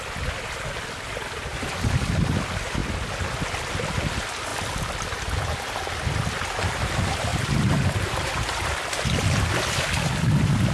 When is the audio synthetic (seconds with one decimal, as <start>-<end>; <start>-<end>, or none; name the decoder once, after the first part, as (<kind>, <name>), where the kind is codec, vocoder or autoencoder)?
1.5-2.2 (vocoder, BigVGAN v2); 7.3-9.0